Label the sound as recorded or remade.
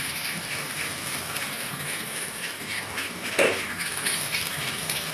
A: remade